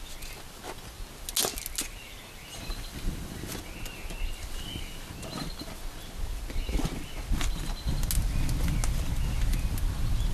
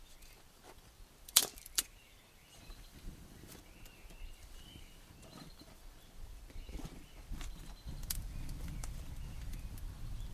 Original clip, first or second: first